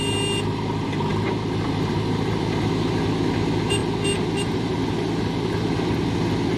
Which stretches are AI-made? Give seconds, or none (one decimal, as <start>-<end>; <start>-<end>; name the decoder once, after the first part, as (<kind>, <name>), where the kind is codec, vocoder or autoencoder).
none